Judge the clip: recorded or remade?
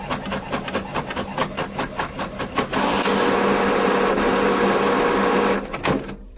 recorded